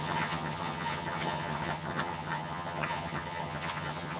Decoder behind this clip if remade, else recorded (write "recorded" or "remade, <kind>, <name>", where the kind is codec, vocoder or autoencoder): remade, vocoder, HiFi-GAN